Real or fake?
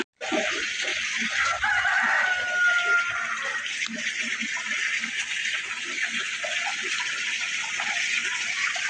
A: real